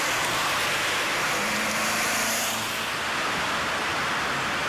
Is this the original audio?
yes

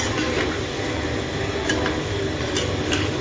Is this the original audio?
yes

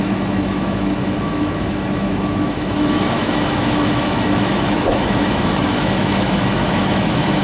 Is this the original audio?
no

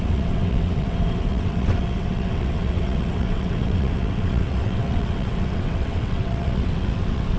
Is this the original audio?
no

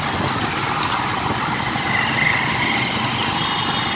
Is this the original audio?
yes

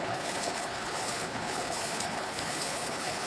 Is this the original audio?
no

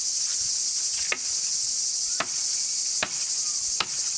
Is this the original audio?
yes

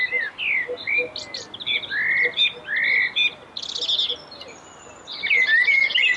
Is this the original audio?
yes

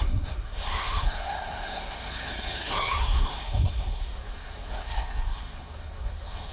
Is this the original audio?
no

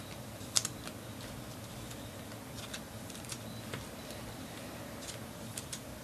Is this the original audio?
yes